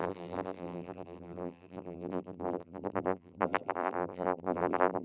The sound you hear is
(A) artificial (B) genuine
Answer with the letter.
A